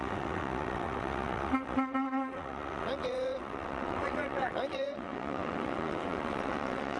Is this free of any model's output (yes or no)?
no